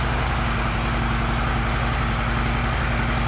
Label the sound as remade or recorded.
recorded